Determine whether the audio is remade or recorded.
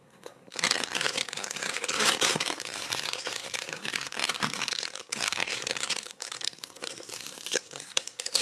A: remade